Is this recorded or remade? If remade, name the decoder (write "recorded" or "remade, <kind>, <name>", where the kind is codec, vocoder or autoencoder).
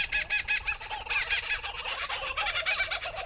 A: recorded